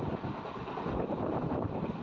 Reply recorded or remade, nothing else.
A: recorded